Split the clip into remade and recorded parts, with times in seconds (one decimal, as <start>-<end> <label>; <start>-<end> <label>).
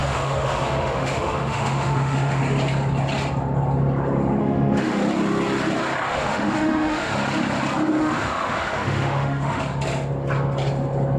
0.0-2.4 remade; 2.4-4.4 recorded; 4.4-5.0 remade; 5.0-6.1 recorded; 6.1-7.1 remade; 7.1-8.0 recorded; 8.0-9.6 remade; 9.6-11.2 recorded